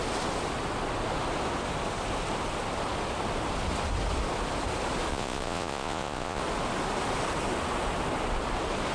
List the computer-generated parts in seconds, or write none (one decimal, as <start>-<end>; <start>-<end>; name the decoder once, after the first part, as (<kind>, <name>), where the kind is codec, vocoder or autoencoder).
5.1-6.4 (vocoder, Vocos)